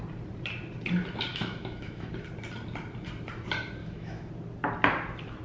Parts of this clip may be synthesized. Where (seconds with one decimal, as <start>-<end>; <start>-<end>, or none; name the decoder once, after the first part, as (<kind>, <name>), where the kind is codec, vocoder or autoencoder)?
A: 1.3-2.1 (autoencoder, DAC-VAE); 3.8-4.3